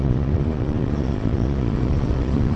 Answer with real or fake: fake